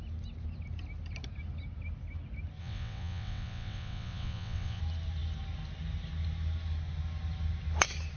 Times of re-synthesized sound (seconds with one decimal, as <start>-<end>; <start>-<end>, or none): 2.6-4.8